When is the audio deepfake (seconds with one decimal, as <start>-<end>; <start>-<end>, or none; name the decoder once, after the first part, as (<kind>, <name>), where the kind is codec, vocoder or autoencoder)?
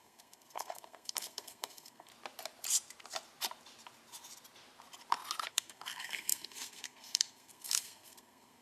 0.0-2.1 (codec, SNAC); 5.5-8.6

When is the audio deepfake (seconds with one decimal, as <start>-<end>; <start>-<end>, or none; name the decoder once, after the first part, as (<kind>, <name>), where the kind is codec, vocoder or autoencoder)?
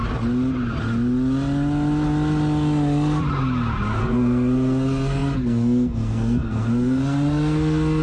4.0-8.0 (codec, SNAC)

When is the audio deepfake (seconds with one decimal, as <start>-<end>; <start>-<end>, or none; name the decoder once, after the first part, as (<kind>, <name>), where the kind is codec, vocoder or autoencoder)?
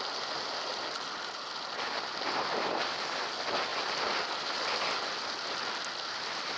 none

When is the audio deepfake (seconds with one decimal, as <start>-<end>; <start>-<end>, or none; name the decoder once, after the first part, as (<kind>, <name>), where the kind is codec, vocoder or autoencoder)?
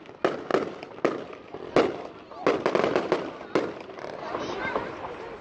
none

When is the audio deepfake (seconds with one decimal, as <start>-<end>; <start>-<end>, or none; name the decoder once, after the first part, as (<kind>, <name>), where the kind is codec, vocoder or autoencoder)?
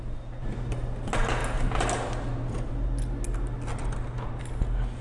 none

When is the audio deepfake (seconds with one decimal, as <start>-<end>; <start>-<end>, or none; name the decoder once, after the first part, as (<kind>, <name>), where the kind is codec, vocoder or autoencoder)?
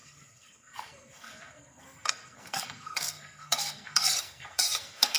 0.0-5.2 (codec, SNAC)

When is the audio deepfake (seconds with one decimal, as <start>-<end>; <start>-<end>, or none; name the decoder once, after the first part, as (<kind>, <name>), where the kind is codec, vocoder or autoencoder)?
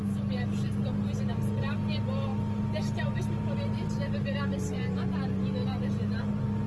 none